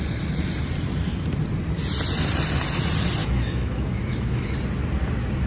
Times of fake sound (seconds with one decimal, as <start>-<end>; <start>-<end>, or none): 3.2-4.5